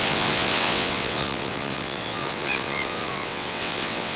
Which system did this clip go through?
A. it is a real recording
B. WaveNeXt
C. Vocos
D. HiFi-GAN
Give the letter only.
B